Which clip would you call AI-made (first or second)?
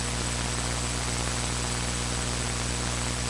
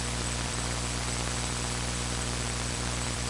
second